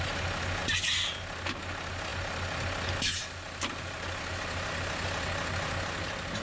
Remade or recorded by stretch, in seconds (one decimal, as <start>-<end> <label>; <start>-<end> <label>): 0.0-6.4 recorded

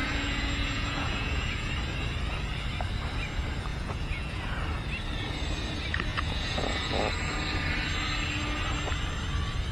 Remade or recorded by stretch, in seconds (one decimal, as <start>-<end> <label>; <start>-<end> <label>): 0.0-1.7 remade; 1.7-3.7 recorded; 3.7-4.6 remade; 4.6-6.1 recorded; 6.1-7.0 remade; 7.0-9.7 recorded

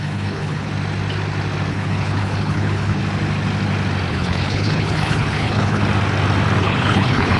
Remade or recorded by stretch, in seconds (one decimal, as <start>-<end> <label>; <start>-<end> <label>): 0.0-0.7 remade; 0.7-1.7 recorded; 1.7-3.0 remade; 3.0-4.1 recorded; 4.1-5.8 remade; 5.8-6.6 recorded; 6.6-7.4 remade